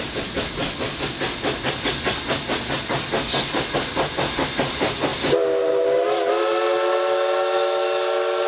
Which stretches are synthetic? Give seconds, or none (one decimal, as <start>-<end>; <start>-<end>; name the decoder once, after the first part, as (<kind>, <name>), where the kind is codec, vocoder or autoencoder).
none